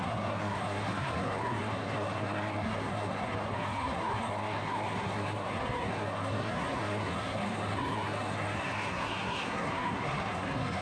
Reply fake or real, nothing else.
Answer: fake